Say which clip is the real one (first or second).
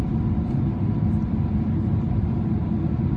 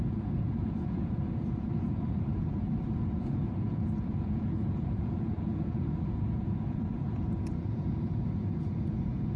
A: first